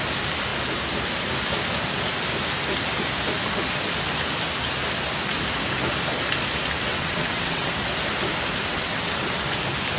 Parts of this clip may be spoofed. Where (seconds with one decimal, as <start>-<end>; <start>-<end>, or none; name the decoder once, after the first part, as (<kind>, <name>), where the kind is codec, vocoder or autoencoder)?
6.9-7.7 (vocoder, WaveNeXt); 8.7-9.2